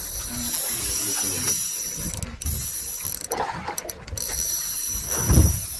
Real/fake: real